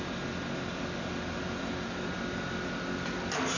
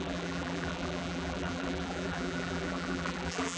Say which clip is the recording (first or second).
first